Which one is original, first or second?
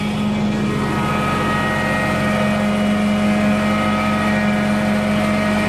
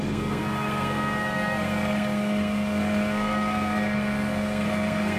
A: first